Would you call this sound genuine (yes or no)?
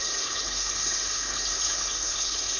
no